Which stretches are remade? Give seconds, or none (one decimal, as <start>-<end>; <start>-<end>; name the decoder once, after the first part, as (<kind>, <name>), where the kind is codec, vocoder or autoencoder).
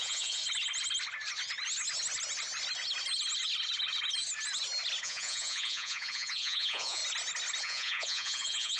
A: 0.0-0.4 (vocoder, Vocos); 5.0-7.0; 7.6-8.8